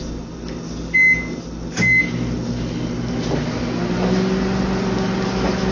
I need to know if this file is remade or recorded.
recorded